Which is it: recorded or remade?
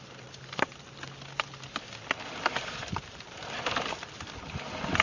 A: recorded